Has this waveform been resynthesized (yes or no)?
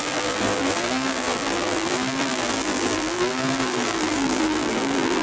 yes